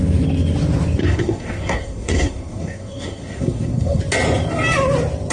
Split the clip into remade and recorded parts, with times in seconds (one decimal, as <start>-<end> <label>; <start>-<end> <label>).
0.0-1.0 recorded; 1.0-4.0 remade; 4.0-5.3 recorded